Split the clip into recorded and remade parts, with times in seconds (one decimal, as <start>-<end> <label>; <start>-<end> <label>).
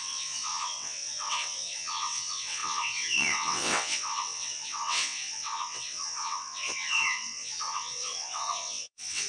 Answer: 0.0-9.3 remade